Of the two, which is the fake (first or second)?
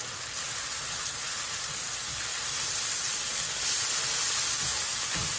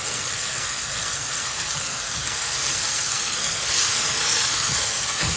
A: second